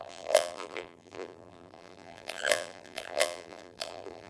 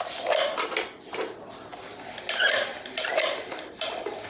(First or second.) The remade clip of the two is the first